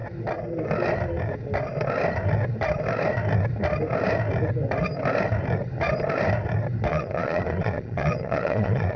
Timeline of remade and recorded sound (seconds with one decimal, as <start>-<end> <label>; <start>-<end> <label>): 0.0-6.9 recorded; 6.9-9.0 remade